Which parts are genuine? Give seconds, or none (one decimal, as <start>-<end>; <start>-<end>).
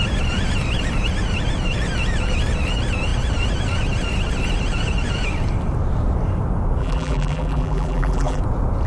0.0-6.8; 8.4-8.9